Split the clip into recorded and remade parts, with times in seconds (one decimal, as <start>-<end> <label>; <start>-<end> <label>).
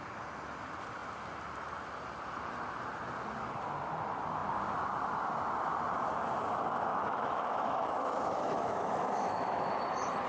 0.0-6.9 recorded; 6.9-9.7 remade; 9.7-10.3 recorded